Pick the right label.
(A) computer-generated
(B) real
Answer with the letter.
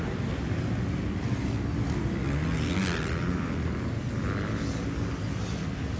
B